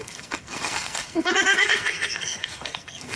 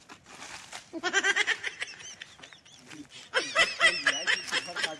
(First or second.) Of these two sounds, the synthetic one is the first